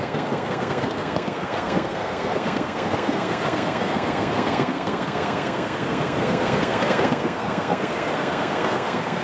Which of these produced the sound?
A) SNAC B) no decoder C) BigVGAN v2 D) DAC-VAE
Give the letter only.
A